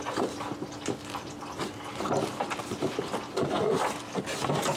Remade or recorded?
recorded